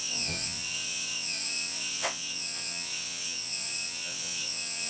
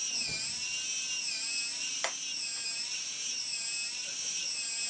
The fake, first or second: first